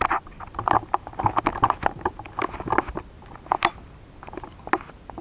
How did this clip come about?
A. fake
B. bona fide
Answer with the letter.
B